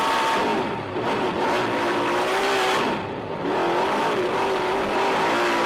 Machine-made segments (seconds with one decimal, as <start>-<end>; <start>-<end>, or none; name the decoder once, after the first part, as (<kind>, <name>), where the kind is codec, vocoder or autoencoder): 0.5-3.3 (vocoder, BigVGAN v2)